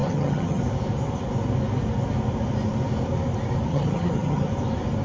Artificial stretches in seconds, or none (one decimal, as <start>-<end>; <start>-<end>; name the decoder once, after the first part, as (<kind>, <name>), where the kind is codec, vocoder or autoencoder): 0.0-0.6 (vocoder, HiFi-GAN); 3.7-4.5